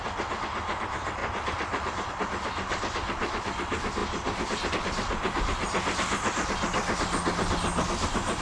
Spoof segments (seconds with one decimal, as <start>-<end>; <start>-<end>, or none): none